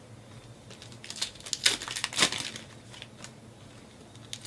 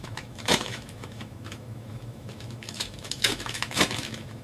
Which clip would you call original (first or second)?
first